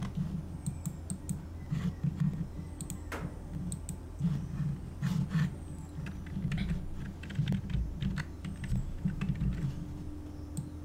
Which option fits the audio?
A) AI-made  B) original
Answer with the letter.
B